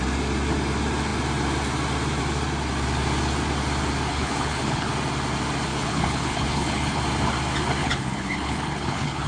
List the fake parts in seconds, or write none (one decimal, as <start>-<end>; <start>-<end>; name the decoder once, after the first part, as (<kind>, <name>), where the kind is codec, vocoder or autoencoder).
4.1-4.9 (codec, HILCodec); 5.7-7.0; 7.8-9.3